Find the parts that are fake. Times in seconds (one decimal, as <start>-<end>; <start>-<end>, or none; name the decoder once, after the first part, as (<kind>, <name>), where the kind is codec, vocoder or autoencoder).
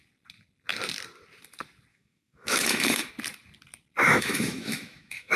1.9-3.1 (autoencoder, DAC-VAE); 4.0-5.4